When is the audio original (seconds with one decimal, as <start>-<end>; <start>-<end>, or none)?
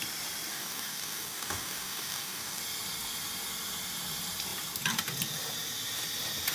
0.0-0.5; 2.6-6.5